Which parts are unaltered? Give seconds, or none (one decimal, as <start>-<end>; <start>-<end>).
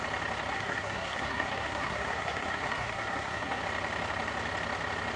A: 0.0-0.5; 3.6-5.2